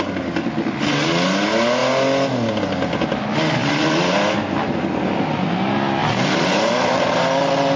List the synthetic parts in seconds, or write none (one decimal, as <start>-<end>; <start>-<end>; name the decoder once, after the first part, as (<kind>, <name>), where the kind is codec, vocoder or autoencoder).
3.6-4.1 (vocoder, BigVGAN v2); 6.0-7.2